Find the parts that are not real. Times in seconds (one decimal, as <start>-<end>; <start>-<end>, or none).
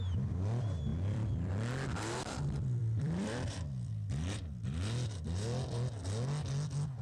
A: 0.9-1.5; 2.8-3.9